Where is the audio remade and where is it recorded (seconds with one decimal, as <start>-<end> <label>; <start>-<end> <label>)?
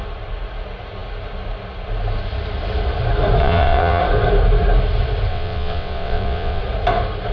0.0-3.4 recorded; 3.4-4.0 remade; 4.0-5.3 recorded; 5.3-6.6 remade; 6.6-7.3 recorded